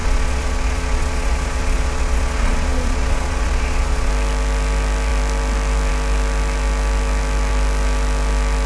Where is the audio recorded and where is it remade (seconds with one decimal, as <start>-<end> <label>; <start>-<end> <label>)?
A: 0.0-4.1 remade; 4.1-8.7 recorded